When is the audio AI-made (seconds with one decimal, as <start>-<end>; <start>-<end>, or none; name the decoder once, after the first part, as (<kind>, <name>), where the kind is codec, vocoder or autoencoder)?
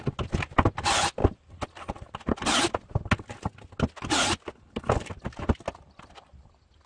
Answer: none